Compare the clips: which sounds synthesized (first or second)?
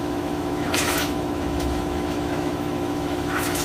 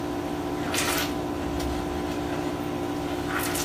first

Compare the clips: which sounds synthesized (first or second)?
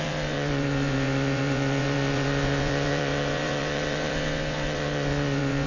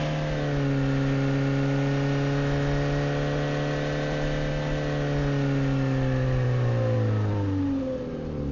first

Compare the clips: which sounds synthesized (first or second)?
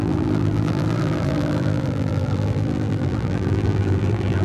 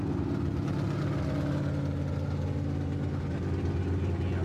first